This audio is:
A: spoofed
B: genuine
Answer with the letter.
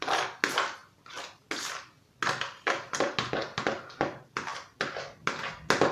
B